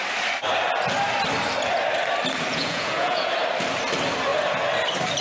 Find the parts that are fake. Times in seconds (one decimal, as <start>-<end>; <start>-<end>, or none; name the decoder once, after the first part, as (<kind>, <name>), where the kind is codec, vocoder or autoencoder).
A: 2.5-3.3 (vocoder, Vocos)